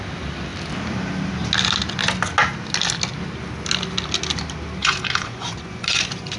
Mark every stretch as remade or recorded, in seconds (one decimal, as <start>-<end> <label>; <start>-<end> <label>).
0.0-4.8 recorded; 4.8-6.4 remade